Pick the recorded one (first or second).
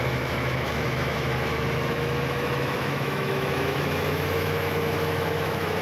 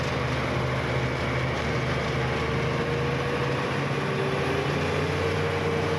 second